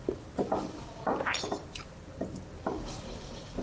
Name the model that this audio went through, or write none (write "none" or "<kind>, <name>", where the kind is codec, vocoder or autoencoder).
vocoder, BigVGAN v2